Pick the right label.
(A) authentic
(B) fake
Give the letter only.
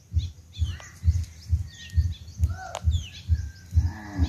A